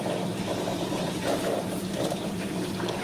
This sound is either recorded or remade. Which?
remade